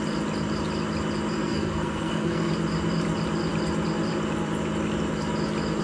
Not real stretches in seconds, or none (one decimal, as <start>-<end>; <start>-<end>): 1.3-2.5